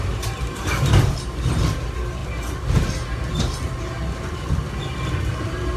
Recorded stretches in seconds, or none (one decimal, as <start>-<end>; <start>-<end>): 0.0-5.8

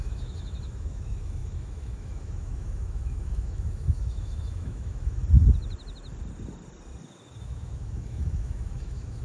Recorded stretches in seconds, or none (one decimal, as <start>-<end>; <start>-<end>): 5.2-7.4

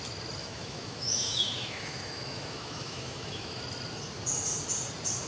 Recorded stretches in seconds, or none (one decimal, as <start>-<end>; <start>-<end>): 0.0-0.4; 3.6-5.3

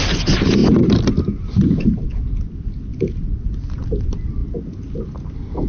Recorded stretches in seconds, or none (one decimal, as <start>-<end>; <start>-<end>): 0.0-5.7